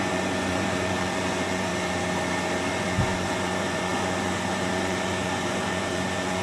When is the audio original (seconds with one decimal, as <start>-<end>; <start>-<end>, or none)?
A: 1.7-2.7